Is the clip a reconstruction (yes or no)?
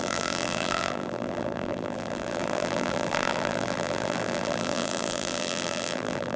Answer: yes